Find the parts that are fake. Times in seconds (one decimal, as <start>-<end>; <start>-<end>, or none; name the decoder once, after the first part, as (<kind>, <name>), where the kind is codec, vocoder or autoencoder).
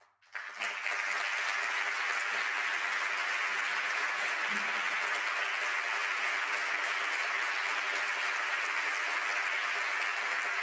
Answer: 3.7-4.4 (vocoder, Vocos)